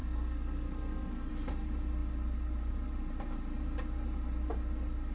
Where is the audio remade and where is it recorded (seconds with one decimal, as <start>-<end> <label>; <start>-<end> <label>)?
0.0-1.3 remade; 1.3-5.1 recorded